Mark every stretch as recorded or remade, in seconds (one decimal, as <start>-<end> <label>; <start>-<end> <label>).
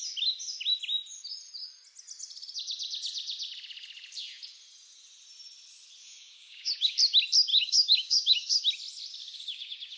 0.0-6.0 recorded; 6.0-6.9 remade; 6.9-7.5 recorded; 7.5-8.6 remade; 8.6-9.2 recorded; 9.2-10.0 remade